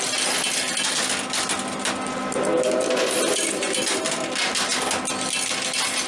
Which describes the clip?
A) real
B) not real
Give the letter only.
A